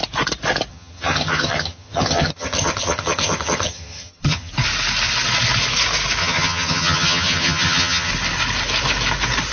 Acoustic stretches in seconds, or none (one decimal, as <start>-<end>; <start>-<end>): 0.0-0.7; 4.5-6.2; 8.1-9.5